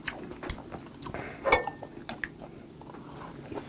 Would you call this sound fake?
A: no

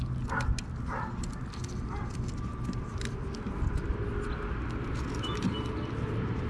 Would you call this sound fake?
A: no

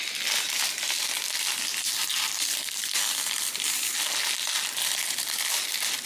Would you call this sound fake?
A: no